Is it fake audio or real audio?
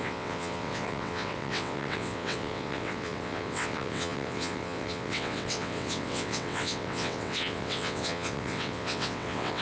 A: fake